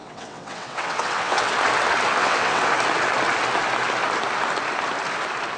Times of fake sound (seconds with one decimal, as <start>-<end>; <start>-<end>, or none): 0.0-1.5; 2.2-2.7